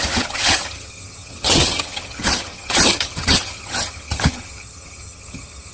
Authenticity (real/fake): fake